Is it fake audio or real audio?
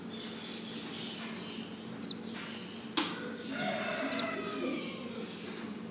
real